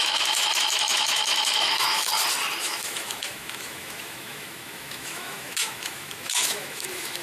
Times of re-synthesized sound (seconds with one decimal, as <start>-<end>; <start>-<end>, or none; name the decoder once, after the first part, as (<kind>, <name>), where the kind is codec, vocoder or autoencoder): 0.0-2.1 (autoencoder, DAC-VAE); 2.6-7.2